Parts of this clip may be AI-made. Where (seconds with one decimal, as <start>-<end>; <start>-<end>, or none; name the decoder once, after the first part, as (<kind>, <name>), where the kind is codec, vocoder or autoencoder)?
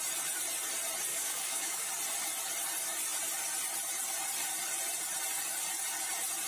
1.1-1.9 (codec, DAC)